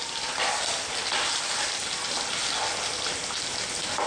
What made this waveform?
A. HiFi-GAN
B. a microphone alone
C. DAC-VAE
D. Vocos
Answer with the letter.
B